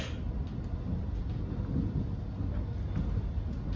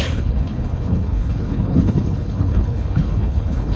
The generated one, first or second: second